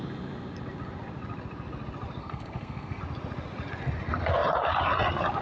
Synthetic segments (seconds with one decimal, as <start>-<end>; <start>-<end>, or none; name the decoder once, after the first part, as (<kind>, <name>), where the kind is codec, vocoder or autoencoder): 2.2-3.0 (codec, SNAC)